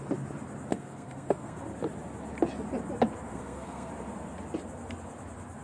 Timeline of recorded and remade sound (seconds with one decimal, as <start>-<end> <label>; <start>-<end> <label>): 0.0-0.7 recorded; 0.7-1.6 remade; 1.6-3.3 recorded; 3.3-3.9 remade; 3.9-5.6 recorded